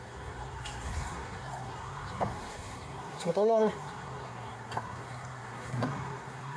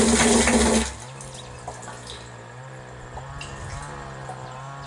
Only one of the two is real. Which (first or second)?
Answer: second